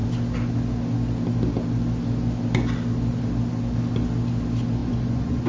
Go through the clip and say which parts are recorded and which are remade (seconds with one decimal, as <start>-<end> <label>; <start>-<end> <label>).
0.0-4.8 recorded; 4.8-5.5 remade